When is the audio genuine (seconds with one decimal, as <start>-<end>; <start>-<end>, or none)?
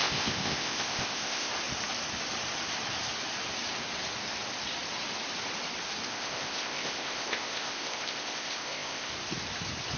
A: 1.5-6.1; 9.1-10.0